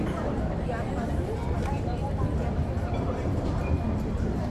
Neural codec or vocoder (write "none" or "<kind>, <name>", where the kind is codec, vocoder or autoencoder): vocoder, BigVGAN v2